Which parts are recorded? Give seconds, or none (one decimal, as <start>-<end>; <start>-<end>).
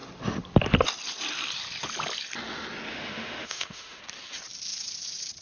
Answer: 0.0-2.9; 4.0-5.4